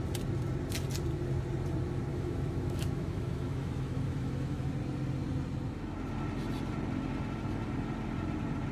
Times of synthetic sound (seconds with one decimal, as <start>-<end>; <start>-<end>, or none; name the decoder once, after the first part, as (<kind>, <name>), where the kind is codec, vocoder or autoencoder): 2.1-4.7 (autoencoder, DAC-VAE)